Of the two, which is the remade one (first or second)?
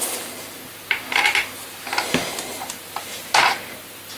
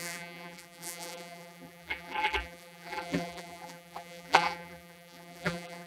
second